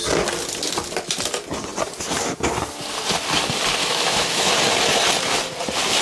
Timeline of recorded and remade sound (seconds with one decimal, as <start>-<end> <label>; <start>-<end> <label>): 0.0-3.8 recorded; 3.8-4.5 remade; 4.5-6.0 recorded